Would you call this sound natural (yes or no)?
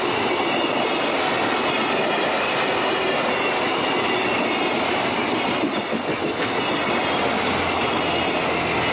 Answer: yes